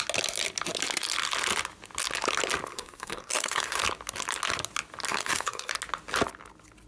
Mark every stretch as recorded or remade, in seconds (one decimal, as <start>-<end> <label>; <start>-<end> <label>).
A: 0.0-2.7 recorded; 2.7-3.8 remade; 3.8-5.1 recorded; 5.1-5.7 remade; 5.7-6.9 recorded